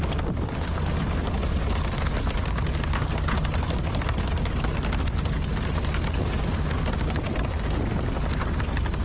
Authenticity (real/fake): real